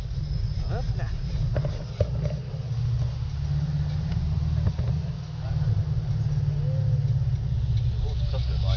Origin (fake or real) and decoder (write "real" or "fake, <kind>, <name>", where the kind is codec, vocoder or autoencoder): real